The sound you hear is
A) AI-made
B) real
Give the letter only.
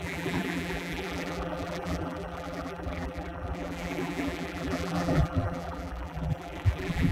A